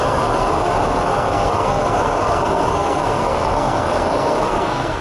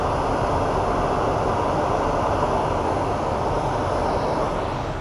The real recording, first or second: second